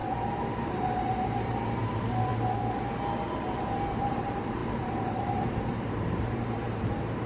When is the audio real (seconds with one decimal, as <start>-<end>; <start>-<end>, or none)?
0.0-0.7; 2.3-4.0